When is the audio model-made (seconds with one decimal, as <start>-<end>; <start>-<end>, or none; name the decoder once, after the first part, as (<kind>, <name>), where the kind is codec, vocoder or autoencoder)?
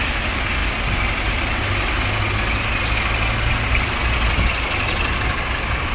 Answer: none